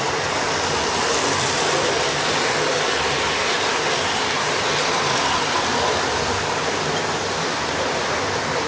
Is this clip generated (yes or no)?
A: no